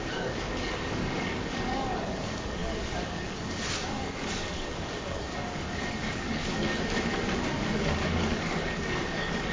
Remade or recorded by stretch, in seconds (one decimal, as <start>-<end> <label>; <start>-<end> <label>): 0.0-9.5 remade

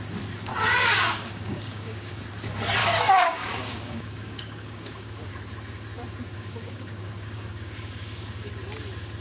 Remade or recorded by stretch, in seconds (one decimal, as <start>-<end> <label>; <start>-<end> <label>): 0.0-0.5 recorded; 0.5-2.1 remade; 2.1-2.8 recorded; 2.8-5.3 remade; 5.3-6.3 recorded; 6.3-8.5 remade; 8.5-9.2 recorded

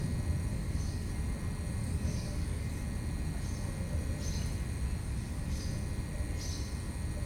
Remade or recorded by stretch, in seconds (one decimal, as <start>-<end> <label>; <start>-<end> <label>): 0.0-0.5 recorded; 0.5-1.1 remade; 1.1-1.8 recorded; 1.8-2.8 remade; 2.8-5.0 recorded; 5.0-5.6 remade; 5.6-7.3 recorded

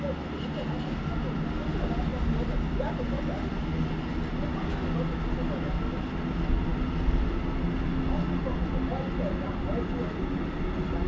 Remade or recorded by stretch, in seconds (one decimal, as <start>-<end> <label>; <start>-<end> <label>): 0.0-11.1 recorded

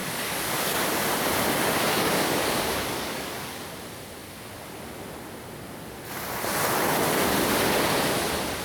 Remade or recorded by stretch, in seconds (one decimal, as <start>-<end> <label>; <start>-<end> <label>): 0.0-0.8 remade; 0.8-1.9 recorded; 1.9-3.6 remade; 3.6-8.6 recorded

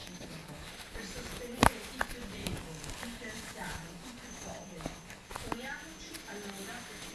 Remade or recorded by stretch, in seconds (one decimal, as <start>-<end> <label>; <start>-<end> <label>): 0.0-0.7 remade; 0.7-2.4 recorded; 2.4-5.3 remade; 5.3-7.1 recorded

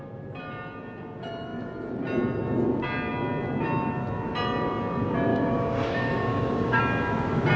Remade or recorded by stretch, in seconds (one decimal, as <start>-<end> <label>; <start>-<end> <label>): 0.0-5.3 recorded; 5.3-6.8 remade; 6.8-7.6 recorded